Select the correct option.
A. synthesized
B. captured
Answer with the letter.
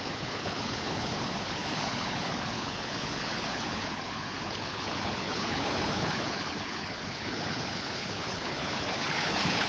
A